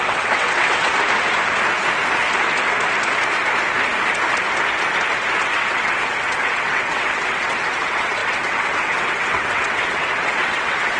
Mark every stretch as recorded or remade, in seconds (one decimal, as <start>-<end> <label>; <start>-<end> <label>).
0.0-0.9 remade; 0.9-5.4 recorded; 5.4-11.0 remade